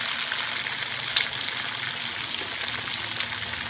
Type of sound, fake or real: real